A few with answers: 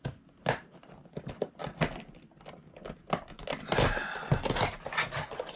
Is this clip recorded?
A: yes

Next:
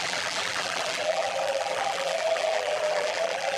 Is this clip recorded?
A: no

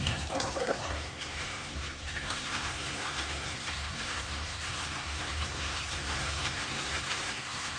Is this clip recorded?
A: no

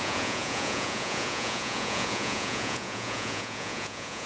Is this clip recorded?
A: no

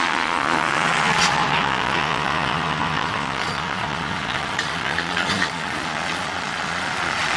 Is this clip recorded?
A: no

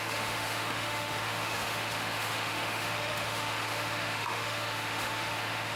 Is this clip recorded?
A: no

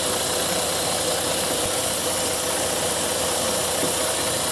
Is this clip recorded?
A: yes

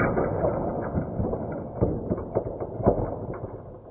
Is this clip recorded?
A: yes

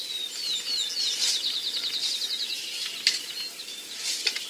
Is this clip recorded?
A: yes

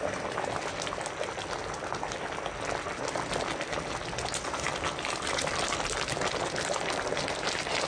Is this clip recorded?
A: yes